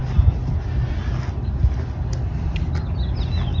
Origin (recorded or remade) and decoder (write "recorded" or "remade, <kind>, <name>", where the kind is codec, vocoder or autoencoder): recorded